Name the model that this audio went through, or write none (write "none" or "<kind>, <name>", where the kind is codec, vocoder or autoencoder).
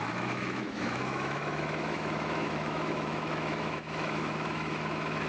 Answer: autoencoder, DAC-VAE